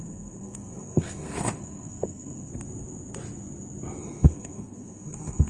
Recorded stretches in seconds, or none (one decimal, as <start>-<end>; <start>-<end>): 2.5-4.0